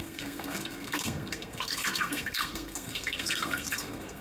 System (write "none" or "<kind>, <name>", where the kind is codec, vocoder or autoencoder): codec, SNAC